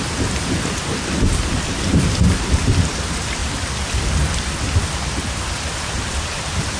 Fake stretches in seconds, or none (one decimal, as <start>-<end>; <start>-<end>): 0.0-6.8